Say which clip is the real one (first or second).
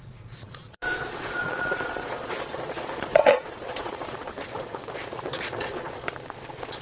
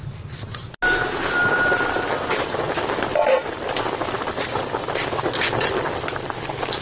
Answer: second